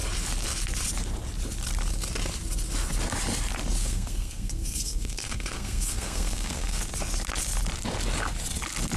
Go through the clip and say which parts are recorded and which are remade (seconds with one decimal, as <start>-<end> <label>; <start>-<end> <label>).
0.0-3.8 recorded; 3.8-6.8 remade; 6.8-9.0 recorded